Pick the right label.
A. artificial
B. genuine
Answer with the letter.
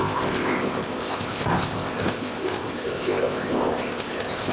A